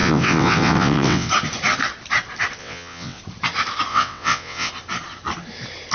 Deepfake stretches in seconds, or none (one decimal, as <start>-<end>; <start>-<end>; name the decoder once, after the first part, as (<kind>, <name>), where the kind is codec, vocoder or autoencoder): 0.0-1.3 (vocoder, WaveNeXt); 2.6-3.2; 3.9-4.7